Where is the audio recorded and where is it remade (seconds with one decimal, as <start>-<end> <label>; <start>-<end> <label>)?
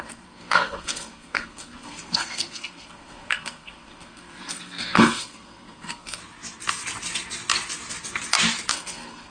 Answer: 0.0-6.2 remade; 6.2-8.7 recorded; 8.7-9.3 remade